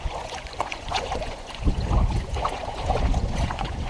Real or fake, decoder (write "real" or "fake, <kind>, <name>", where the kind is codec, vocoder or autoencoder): fake, vocoder, Vocos